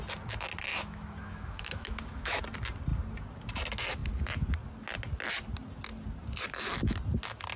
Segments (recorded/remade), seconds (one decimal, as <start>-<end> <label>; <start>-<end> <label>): 0.0-0.7 recorded; 0.7-2.4 remade; 2.4-7.6 recorded